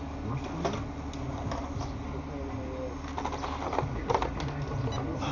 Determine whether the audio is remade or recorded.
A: recorded